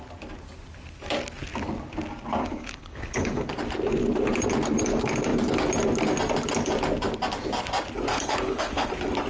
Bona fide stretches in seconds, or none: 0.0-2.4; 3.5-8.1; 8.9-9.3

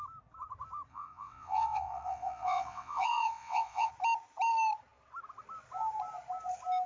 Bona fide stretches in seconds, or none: 0.0-0.9; 3.9-6.9

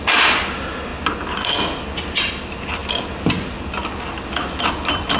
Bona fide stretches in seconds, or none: 0.0-5.2

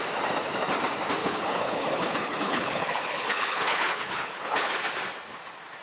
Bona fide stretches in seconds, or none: 0.0-1.2; 4.7-5.8

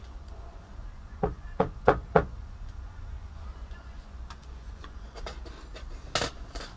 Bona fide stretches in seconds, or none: 5.4-6.3

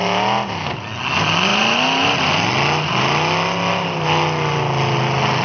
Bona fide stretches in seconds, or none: 0.0-5.4

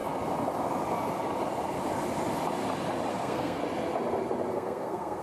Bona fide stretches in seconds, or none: 0.0-3.1; 3.6-4.5

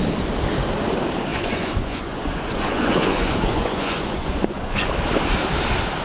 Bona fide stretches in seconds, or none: 0.0-1.3; 4.9-6.0